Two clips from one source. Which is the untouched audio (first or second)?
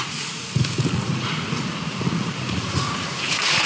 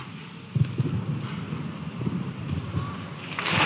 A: second